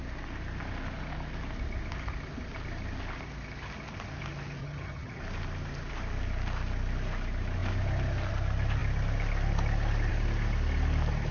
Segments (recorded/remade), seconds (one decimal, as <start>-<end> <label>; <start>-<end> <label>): 0.0-4.6 recorded; 4.6-5.2 remade; 5.2-11.3 recorded